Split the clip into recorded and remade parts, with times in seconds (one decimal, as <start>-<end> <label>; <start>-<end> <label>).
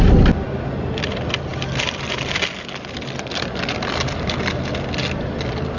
0.0-5.8 recorded